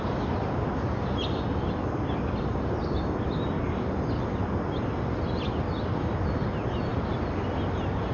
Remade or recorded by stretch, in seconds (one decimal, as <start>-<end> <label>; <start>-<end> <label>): 0.0-8.1 recorded